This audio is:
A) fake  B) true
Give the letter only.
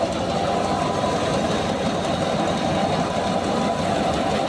B